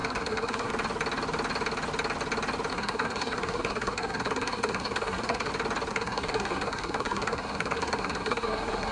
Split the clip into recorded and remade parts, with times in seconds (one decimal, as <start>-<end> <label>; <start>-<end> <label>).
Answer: 0.0-0.7 remade; 0.7-2.7 recorded; 2.7-5.5 remade; 5.5-5.9 recorded; 5.9-8.9 remade